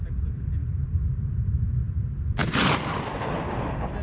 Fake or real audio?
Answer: real